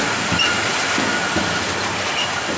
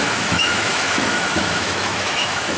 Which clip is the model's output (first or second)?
second